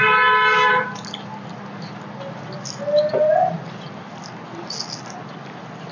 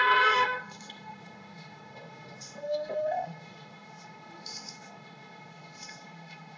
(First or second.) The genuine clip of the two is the first